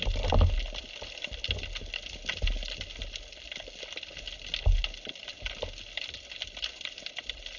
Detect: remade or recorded recorded